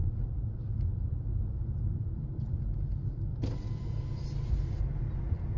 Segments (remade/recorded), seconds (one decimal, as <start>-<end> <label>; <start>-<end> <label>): 0.0-2.5 remade; 2.5-3.3 recorded; 3.3-4.4 remade; 4.4-5.6 recorded